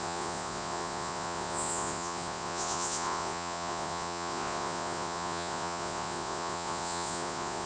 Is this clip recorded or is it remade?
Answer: remade